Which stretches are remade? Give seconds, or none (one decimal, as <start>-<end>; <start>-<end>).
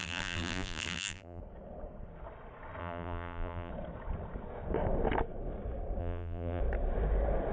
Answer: 0.0-1.4; 2.8-3.7; 6.0-6.6